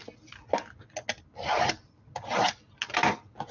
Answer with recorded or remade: recorded